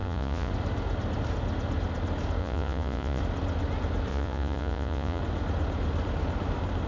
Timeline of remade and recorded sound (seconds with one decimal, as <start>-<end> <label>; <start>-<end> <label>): 0.0-0.5 remade; 0.5-2.4 recorded; 2.4-3.2 remade; 3.2-4.1 recorded; 4.1-5.2 remade; 5.2-6.9 recorded